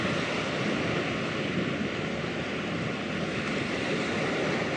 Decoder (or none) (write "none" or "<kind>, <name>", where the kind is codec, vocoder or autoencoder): none